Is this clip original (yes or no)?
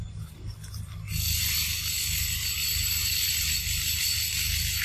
yes